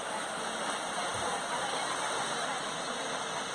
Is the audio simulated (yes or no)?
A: no